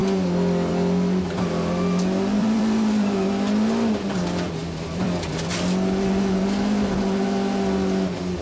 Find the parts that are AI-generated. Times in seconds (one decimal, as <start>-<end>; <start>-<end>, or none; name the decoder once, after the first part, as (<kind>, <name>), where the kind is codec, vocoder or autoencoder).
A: 2.4-3.3 (vocoder, BigVGAN v2); 4.6-5.3